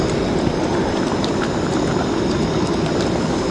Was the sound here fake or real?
real